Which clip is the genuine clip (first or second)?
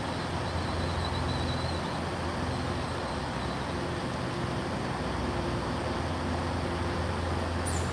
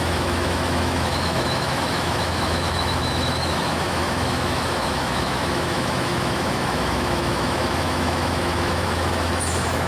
first